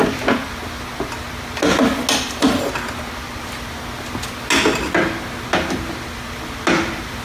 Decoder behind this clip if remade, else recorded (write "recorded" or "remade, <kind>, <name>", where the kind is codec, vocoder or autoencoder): recorded